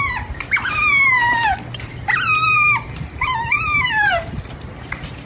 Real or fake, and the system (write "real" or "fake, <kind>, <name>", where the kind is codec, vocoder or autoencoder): fake, vocoder, BigVGAN v2